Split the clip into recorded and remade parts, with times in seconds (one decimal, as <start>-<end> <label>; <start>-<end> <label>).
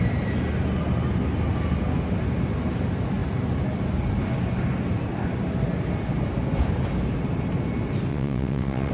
0.0-8.1 recorded; 8.1-8.9 remade